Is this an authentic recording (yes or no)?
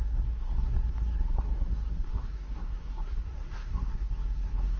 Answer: no